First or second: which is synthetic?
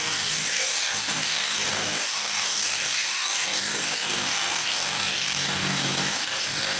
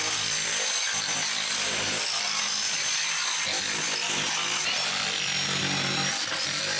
first